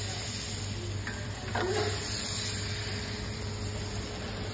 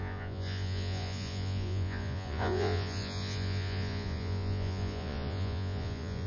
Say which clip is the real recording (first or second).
first